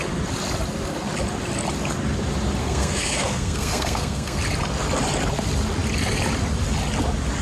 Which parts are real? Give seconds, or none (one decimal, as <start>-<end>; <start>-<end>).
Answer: 0.0-2.6; 4.4-7.4